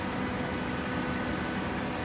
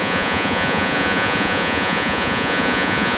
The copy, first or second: second